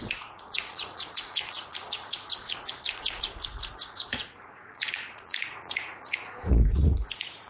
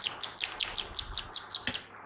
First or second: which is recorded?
second